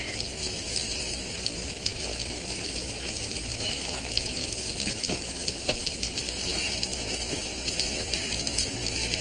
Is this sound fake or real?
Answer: fake